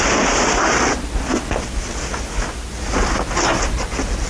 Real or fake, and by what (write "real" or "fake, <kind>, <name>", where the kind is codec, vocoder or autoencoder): real